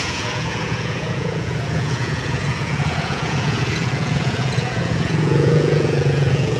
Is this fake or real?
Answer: fake